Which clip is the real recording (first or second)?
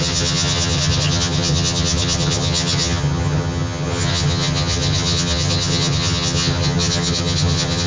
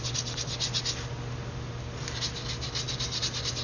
second